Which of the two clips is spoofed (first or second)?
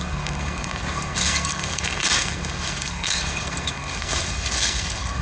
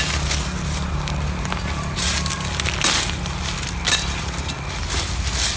first